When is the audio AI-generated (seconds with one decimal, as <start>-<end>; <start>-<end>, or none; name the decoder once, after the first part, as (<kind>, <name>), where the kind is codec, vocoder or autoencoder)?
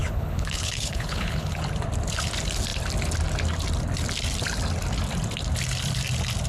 0.0-1.6 (codec, HILCodec)